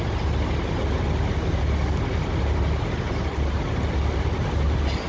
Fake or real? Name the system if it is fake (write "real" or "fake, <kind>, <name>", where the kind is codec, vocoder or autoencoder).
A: real